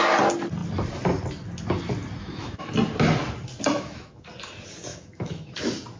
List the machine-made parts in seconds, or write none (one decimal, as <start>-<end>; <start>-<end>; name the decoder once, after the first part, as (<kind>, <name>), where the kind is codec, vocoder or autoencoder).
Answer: 2.2-2.7 (autoencoder, DAC-VAE); 3.7-4.3; 4.9-5.5